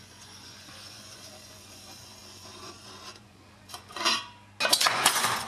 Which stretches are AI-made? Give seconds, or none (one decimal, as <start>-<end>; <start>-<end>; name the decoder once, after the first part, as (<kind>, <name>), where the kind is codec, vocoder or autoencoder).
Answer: 0.0-4.1 (vocoder, Vocos); 4.7-5.5